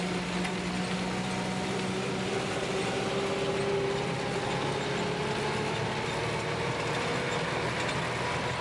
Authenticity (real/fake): real